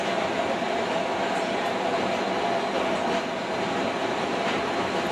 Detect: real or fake real